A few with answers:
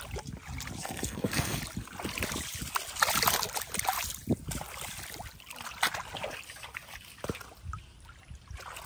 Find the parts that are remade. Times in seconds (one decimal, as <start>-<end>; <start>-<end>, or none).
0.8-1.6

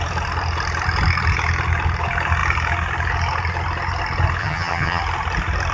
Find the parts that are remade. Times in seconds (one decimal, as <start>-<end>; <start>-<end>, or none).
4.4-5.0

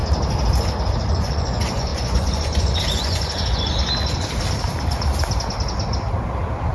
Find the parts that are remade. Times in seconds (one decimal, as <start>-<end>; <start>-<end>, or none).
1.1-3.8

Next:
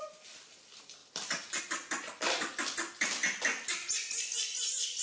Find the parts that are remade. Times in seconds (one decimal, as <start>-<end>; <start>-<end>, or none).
none

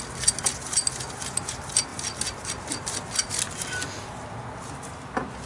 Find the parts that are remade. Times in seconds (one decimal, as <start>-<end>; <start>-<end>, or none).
none